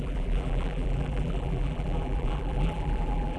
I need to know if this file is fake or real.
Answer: fake